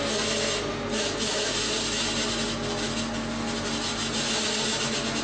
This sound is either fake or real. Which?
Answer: real